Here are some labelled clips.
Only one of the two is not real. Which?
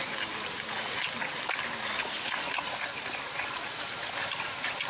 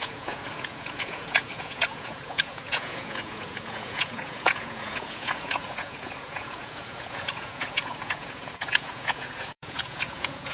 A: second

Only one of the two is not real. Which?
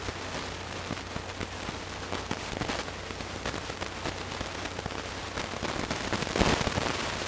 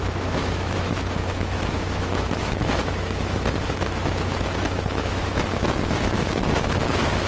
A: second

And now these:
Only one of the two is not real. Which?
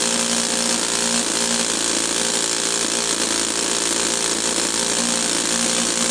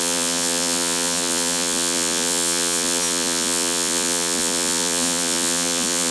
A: second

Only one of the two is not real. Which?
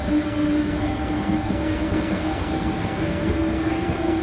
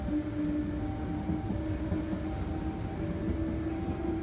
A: first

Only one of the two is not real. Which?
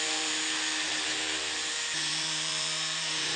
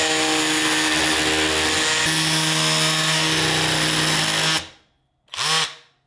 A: first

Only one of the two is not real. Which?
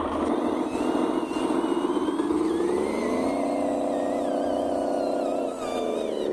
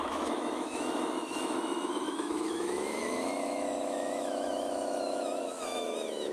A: second